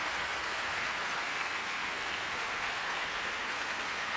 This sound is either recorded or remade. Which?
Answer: remade